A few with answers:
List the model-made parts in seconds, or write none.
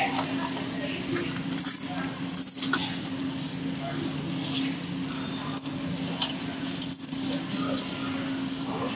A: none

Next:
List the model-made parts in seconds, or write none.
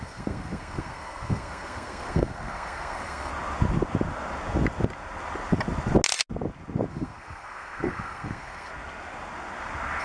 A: 0.0-3.3 (codec, SNAC); 6.9-8.7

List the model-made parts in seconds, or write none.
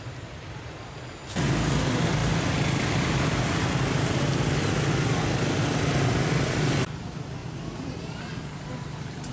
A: none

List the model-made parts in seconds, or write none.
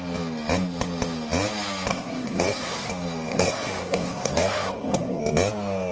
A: 1.9-2.9 (codec, SNAC); 3.3-5.2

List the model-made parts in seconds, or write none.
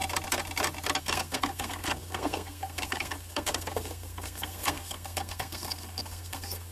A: 1.0-6.7 (codec, SNAC)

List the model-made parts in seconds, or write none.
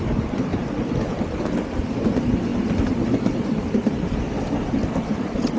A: none